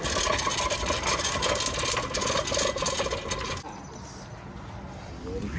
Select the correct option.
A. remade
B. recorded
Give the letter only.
B